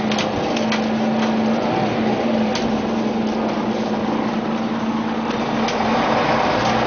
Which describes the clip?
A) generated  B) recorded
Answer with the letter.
B